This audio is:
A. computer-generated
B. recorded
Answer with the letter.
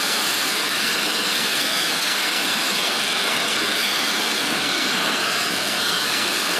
A